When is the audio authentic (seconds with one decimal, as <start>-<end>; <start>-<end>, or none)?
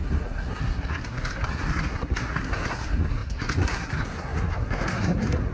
none